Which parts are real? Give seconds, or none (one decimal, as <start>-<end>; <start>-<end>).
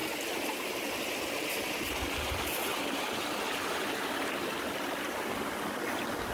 0.0-6.3